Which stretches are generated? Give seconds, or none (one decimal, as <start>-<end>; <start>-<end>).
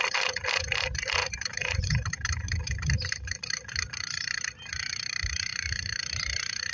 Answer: 1.2-3.9; 5.5-6.0